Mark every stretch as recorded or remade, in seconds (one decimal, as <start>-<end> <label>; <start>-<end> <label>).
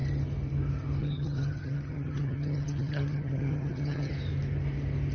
0.0-1.0 recorded; 1.0-4.1 remade; 4.1-5.1 recorded